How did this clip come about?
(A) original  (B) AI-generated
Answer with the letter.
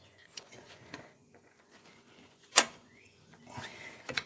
B